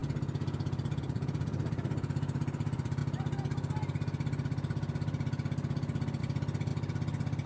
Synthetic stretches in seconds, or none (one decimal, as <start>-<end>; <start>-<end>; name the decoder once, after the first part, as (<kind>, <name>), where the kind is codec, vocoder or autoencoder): 1.0-3.0 (vocoder, BigVGAN v2); 6.2-6.7